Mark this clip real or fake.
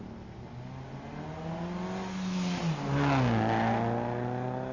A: real